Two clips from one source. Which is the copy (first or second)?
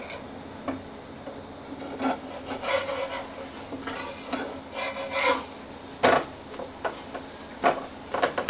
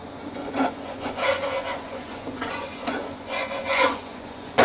second